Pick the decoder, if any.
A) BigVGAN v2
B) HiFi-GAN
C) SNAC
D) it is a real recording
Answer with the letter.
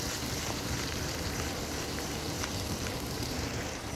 A